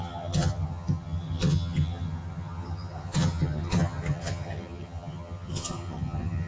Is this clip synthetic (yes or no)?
yes